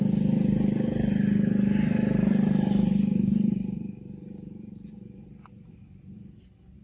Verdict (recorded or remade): recorded